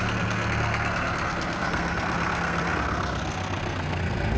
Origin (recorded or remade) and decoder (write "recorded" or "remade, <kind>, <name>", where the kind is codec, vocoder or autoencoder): remade, codec, SNAC